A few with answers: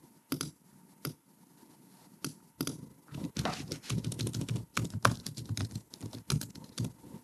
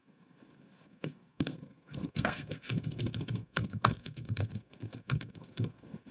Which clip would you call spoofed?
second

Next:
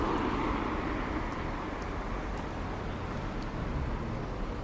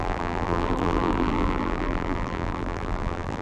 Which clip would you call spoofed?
second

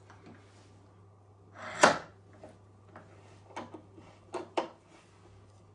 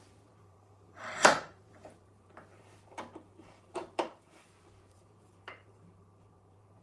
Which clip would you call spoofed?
second